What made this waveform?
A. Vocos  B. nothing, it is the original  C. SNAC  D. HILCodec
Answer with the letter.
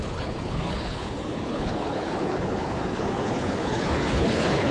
D